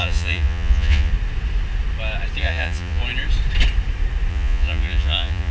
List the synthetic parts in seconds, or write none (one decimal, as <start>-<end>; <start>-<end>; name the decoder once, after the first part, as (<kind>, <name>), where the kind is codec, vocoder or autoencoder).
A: 0.0-1.1 (vocoder, Vocos); 2.4-3.0; 4.3-5.5